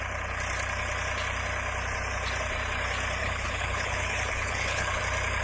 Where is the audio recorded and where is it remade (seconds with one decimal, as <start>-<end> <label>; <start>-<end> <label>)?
0.0-3.2 recorded; 3.2-5.0 remade; 5.0-5.4 recorded

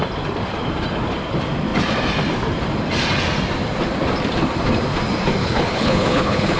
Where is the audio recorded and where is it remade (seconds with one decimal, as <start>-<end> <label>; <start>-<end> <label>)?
0.0-5.4 recorded; 5.4-6.6 remade

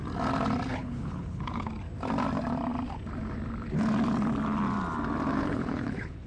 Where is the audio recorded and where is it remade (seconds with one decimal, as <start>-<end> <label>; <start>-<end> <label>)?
0.0-0.7 recorded; 0.7-1.7 remade; 1.7-5.3 recorded; 5.3-6.3 remade